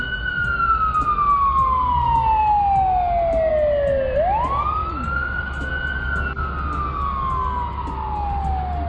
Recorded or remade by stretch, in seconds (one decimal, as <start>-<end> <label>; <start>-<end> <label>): 0.0-4.8 recorded; 4.8-5.7 remade; 5.7-8.9 recorded